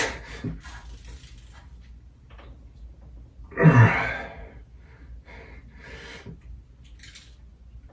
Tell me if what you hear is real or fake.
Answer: real